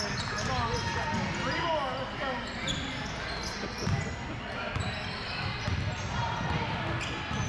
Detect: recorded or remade recorded